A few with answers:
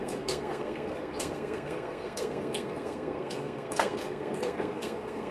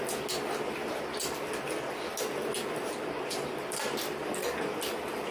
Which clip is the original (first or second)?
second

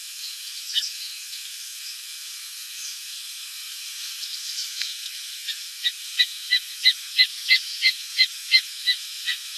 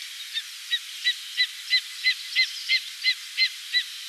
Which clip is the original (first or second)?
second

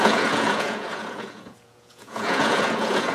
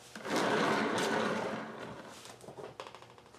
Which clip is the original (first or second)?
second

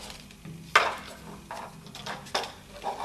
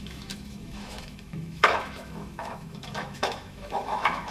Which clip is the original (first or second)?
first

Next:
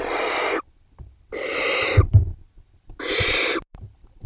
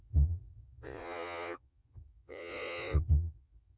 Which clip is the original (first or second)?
first